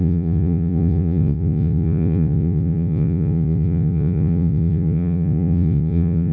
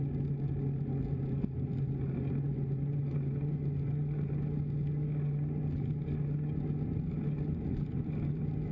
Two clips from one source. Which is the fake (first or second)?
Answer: first